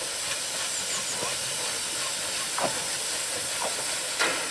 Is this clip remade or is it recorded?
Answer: recorded